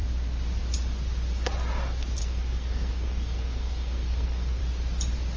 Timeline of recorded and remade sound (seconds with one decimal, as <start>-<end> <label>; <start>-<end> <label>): 0.0-2.2 recorded; 2.2-4.6 remade; 4.6-5.4 recorded